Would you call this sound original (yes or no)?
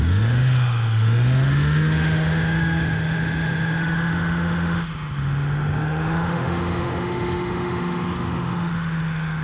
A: no